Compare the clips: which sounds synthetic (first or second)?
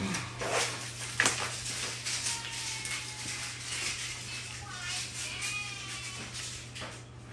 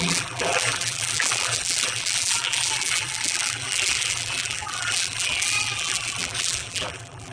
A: second